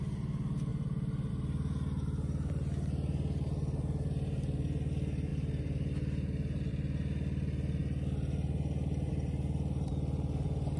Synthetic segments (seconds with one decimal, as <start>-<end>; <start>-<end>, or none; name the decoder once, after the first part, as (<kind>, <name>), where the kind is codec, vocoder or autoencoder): none